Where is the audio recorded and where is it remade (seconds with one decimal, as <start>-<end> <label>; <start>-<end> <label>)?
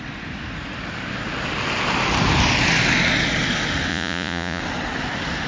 0.0-3.9 recorded; 3.9-4.6 remade; 4.6-5.5 recorded